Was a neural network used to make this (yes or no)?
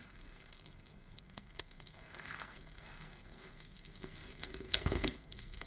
yes